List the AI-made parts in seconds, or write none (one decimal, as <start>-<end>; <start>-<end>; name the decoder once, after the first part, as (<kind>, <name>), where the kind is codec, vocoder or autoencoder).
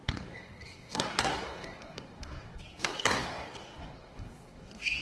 0.0-5.0 (codec, SNAC)